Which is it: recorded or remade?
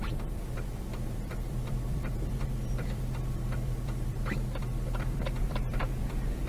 remade